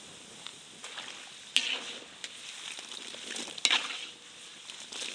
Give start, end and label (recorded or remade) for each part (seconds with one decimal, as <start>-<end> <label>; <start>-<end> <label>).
0.0-5.1 recorded